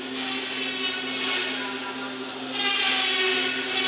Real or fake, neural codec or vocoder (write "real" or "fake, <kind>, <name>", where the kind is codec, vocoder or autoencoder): real